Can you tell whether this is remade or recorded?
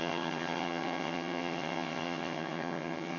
remade